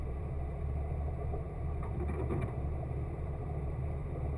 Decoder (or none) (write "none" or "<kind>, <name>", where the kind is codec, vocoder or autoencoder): vocoder, BigVGAN v2